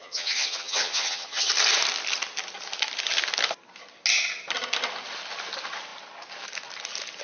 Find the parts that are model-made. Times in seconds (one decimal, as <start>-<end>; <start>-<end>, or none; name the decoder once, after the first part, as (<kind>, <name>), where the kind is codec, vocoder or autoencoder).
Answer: 0.0-1.5 (vocoder, HiFi-GAN)